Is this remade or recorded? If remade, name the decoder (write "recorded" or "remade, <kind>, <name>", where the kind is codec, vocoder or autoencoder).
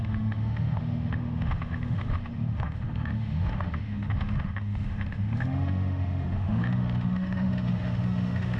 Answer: remade, autoencoder, DAC-VAE